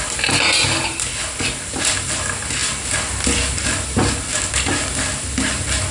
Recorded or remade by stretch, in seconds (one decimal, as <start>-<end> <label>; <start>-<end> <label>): 0.0-5.9 recorded

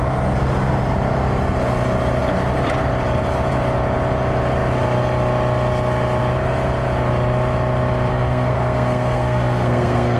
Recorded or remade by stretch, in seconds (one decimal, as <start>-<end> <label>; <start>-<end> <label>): 0.0-8.1 recorded; 8.1-10.2 remade

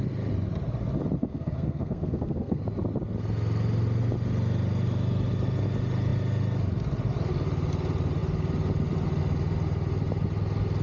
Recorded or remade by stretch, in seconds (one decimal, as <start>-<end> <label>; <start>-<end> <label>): 0.0-1.2 recorded; 1.2-2.6 remade; 2.6-10.8 recorded

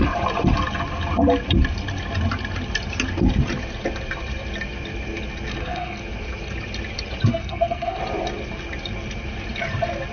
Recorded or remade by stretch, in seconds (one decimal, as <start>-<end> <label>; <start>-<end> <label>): 0.0-5.5 recorded; 5.5-6.0 remade; 6.0-7.3 recorded; 7.3-8.0 remade; 8.0-10.1 recorded

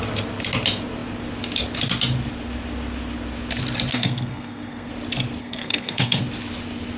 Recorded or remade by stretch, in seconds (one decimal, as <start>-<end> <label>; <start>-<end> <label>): 0.0-3.9 recorded; 3.9-4.9 remade; 4.9-5.4 recorded; 5.4-6.2 remade; 6.2-7.0 recorded

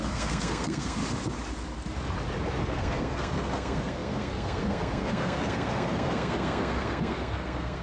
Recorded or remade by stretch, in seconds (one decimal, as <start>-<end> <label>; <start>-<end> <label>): 0.0-1.0 remade; 1.0-2.6 recorded; 2.6-7.8 remade

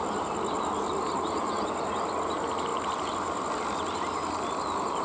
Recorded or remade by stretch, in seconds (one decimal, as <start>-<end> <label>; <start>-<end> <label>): 0.0-5.0 recorded

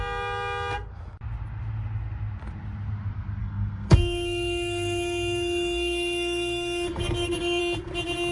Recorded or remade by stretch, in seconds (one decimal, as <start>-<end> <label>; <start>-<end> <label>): 0.0-3.4 recorded; 3.4-7.6 remade; 7.6-8.3 recorded